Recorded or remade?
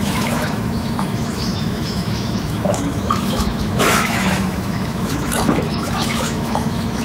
remade